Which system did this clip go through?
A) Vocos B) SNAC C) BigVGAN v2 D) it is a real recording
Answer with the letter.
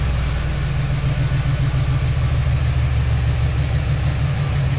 D